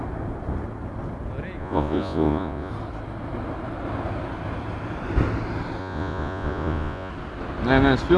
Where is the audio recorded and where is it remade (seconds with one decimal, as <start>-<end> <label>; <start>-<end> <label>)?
0.0-1.6 recorded; 1.6-2.7 remade; 2.7-5.8 recorded; 5.8-7.1 remade; 7.1-8.2 recorded